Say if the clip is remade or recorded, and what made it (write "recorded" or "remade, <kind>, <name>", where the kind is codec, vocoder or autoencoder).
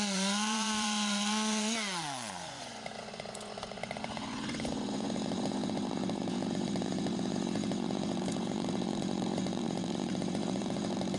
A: remade, vocoder, Vocos